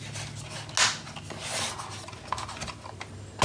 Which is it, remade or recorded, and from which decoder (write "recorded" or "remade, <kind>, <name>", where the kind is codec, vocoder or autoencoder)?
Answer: recorded